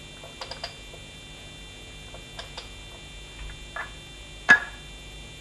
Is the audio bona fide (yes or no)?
yes